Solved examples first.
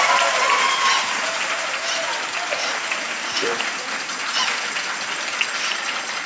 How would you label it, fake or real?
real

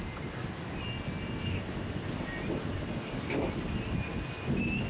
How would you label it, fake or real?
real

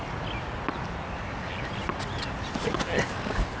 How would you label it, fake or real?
real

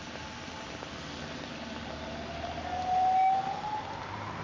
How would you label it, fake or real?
real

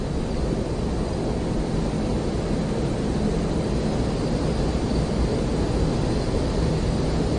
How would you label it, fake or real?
real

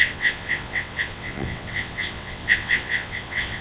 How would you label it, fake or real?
fake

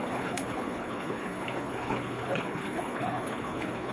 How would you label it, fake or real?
fake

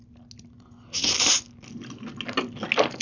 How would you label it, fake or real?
real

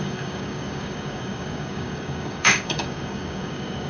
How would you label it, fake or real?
fake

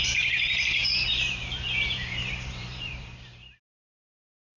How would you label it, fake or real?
fake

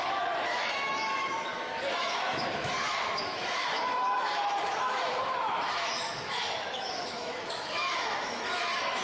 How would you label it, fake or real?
fake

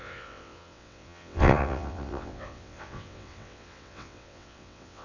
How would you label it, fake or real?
fake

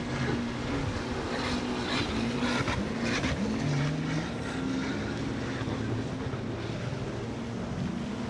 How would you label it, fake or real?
real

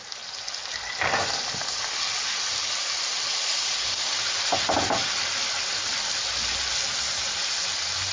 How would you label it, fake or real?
real